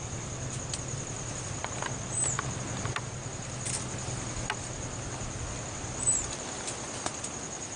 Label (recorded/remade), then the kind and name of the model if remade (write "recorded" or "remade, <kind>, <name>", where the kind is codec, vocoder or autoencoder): recorded